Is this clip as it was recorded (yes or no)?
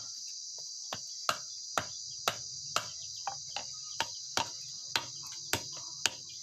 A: yes